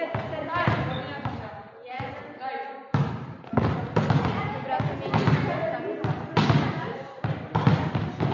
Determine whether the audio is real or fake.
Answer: real